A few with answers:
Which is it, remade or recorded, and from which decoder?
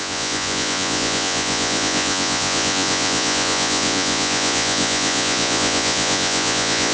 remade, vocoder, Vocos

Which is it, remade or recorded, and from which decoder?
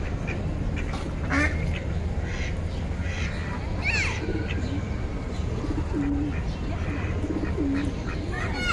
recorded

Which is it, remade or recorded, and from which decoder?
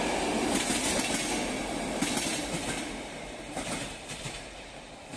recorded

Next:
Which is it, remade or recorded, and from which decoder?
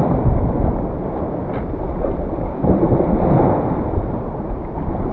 recorded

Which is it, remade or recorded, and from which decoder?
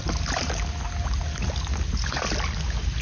recorded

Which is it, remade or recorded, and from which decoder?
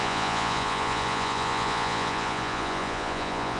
remade, vocoder, Vocos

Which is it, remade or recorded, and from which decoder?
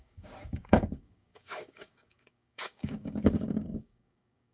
remade, codec, DAC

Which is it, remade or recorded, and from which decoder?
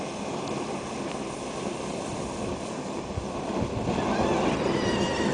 recorded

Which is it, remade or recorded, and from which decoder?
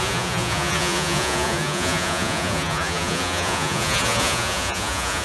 remade, vocoder, Vocos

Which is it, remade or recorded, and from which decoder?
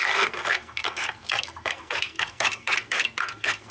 remade, codec, SNAC